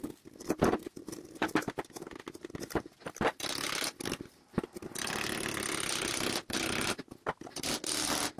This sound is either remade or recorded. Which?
recorded